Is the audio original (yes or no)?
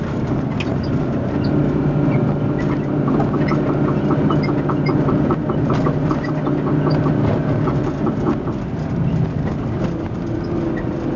yes